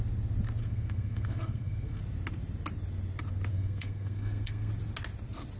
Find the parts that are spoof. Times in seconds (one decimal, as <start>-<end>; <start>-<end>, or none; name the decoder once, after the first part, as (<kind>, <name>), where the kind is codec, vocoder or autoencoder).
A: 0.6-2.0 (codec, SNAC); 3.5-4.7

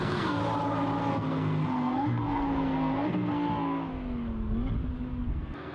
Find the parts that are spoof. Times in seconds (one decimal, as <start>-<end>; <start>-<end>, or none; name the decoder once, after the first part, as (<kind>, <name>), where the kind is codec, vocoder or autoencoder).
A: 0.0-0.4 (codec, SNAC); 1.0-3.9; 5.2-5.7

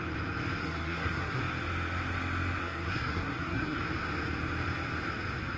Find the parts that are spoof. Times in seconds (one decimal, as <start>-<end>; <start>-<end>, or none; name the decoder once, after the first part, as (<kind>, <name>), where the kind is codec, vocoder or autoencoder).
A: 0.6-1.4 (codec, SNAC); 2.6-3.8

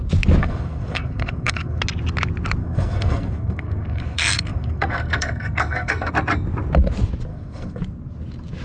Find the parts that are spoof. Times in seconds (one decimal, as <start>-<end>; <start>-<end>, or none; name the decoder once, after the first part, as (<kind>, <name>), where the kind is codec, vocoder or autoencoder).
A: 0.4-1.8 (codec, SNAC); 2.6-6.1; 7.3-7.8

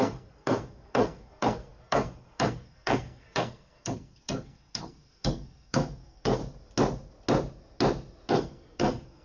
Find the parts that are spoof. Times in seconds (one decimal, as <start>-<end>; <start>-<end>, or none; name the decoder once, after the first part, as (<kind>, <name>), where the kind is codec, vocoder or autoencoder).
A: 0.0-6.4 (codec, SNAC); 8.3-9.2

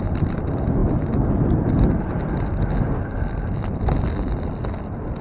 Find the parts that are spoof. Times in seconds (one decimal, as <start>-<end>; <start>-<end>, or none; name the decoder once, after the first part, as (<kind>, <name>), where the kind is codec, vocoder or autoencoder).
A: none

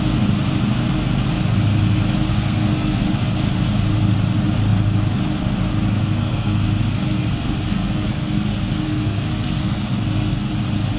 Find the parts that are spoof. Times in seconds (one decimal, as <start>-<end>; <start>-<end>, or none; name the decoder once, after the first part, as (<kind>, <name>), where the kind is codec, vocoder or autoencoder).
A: 2.3-3.0 (codec, SNAC); 6.0-10.5

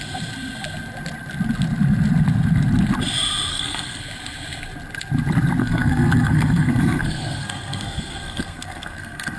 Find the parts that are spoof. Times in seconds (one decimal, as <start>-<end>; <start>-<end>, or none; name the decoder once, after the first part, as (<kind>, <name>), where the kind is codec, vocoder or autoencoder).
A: 3.5-4.0 (codec, SNAC); 5.6-9.4